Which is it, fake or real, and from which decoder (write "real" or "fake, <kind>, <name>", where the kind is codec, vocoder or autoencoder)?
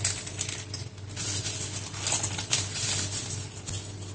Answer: real